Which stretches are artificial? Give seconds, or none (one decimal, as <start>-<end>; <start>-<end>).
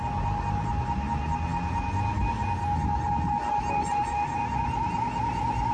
none